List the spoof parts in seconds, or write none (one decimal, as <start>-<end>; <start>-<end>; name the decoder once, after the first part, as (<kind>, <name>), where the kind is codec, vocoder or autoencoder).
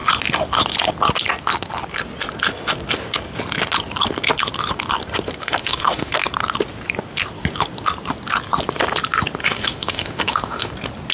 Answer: 5.4-6.1 (autoencoder, DAC-VAE); 9.4-10.7